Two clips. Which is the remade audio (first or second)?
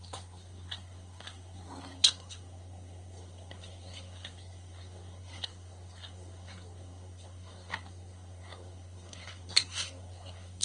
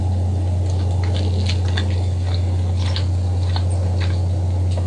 first